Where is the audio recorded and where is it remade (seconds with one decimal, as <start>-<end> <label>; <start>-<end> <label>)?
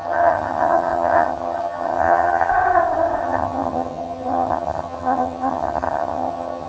0.0-2.5 remade; 2.5-3.2 recorded; 3.2-6.7 remade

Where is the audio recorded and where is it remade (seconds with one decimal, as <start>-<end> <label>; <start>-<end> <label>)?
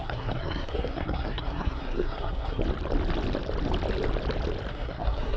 0.0-2.6 remade; 2.6-4.7 recorded; 4.7-5.4 remade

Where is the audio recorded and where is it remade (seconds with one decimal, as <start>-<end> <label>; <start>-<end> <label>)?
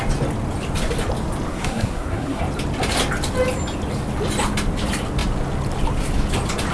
0.0-1.5 recorded; 1.5-2.4 remade; 2.4-6.7 recorded